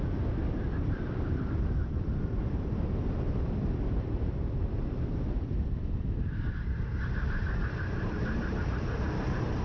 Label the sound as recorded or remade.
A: remade